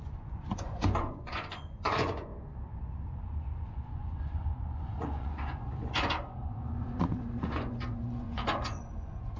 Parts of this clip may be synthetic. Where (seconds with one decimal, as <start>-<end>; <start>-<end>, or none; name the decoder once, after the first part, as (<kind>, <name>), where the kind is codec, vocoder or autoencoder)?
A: 0.0-2.3 (vocoder, Vocos); 2.9-9.4